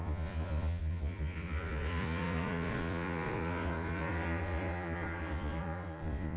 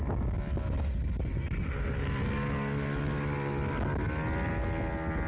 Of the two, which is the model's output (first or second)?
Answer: first